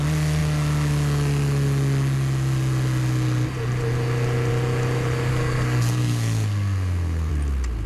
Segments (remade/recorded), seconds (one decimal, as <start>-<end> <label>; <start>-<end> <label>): 0.0-5.3 recorded; 5.3-7.3 remade; 7.3-7.9 recorded

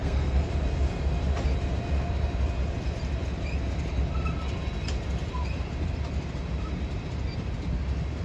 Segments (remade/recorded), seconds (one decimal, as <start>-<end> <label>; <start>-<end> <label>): 0.0-0.5 remade; 0.5-8.2 recorded

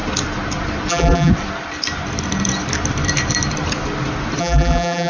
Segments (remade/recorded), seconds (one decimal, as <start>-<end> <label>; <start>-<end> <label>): 0.0-0.9 recorded; 0.9-1.3 remade; 1.3-4.4 recorded; 4.4-5.1 remade

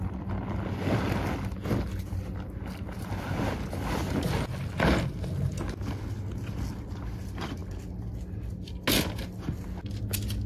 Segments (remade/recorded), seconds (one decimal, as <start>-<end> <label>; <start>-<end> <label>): 0.0-10.5 recorded

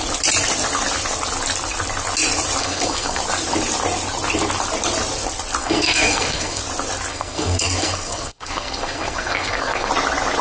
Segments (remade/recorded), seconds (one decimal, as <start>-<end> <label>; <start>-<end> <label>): 0.0-2.6 recorded; 2.6-3.2 remade; 3.2-5.6 recorded; 5.6-6.6 remade; 6.6-7.1 recorded; 7.1-9.9 remade; 9.9-10.4 recorded